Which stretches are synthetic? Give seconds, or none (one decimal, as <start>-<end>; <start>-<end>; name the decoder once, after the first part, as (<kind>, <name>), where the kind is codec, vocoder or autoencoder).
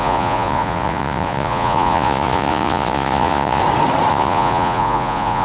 0.0-3.6 (vocoder, Vocos); 4.1-5.4